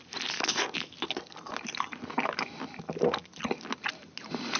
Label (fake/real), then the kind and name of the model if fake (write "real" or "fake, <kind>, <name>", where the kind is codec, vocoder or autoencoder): real